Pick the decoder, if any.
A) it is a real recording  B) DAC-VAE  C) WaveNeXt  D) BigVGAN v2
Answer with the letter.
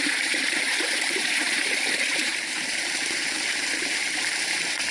D